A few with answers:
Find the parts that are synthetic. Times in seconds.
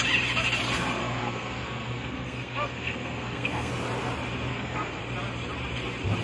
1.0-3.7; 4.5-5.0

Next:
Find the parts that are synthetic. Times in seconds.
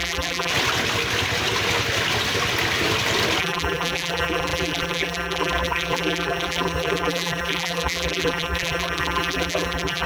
0.0-0.5; 3.4-10.1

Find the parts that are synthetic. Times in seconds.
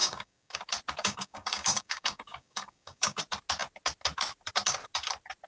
0.0-0.6; 1.0-3.2